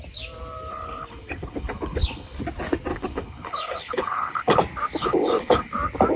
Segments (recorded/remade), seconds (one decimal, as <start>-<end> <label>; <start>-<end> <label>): 0.0-0.7 recorded; 0.7-2.4 remade; 2.4-2.9 recorded; 2.9-4.6 remade; 4.6-5.0 recorded; 5.0-5.7 remade; 5.7-6.2 recorded